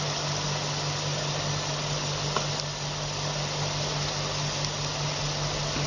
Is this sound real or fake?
real